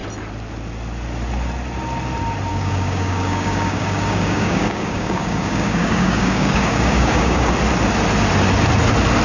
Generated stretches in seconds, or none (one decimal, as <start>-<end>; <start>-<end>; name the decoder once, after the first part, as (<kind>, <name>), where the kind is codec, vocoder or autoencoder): 2.5-7.5 (codec, DAC)